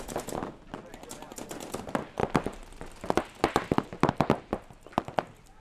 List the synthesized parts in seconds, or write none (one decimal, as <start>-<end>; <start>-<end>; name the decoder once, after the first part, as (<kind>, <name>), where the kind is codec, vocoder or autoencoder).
none